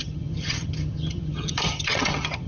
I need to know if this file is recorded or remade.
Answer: remade